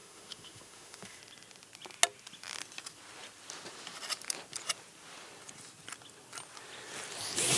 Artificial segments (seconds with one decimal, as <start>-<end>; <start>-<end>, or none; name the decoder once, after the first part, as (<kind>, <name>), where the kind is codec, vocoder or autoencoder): 0.0-1.2 (autoencoder, DAC-VAE)